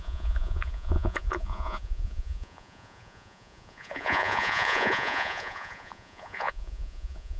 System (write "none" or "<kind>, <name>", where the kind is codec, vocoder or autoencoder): vocoder, Vocos